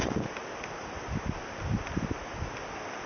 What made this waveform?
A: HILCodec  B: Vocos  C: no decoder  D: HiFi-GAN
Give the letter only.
C